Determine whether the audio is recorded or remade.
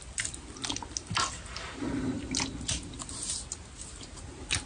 recorded